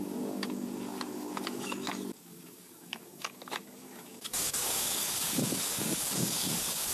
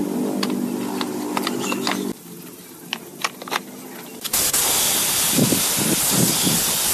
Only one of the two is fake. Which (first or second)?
first